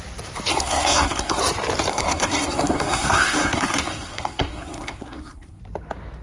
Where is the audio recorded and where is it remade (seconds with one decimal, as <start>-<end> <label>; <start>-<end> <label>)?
0.0-0.5 recorded; 0.5-1.4 remade; 1.4-1.9 recorded; 1.9-5.6 remade; 5.6-6.2 recorded